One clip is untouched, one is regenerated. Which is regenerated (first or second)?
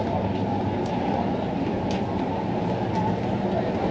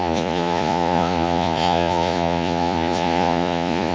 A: second